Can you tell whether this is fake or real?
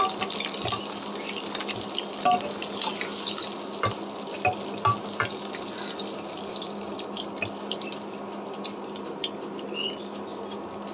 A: real